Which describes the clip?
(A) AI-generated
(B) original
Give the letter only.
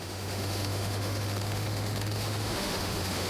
A